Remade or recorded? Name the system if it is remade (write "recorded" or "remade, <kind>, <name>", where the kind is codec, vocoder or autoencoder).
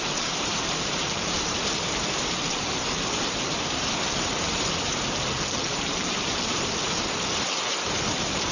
remade, vocoder, BigVGAN v2